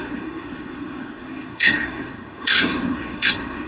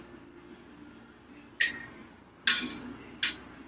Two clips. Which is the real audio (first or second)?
second